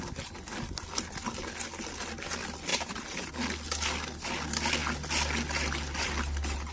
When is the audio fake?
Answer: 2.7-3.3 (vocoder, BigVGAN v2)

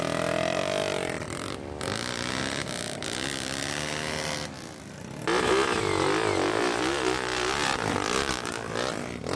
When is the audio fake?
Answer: none

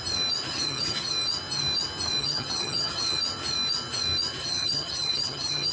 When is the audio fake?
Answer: 0.5-1.1 (vocoder, HiFi-GAN); 2.2-3.2; 4.4-5.7

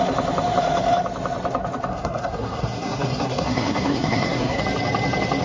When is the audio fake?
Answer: 1.9-4.6 (codec, SNAC)

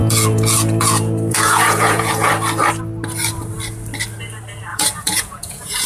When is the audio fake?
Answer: 0.0-2.3 (vocoder, Vocos); 4.7-5.9

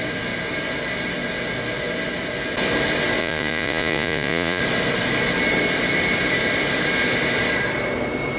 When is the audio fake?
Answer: 3.2-4.6 (vocoder, Vocos)